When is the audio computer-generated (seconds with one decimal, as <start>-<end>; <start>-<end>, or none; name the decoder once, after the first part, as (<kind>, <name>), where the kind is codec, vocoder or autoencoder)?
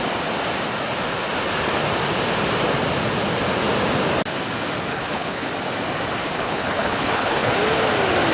4.9-5.5 (codec, HILCodec); 6.2-7.5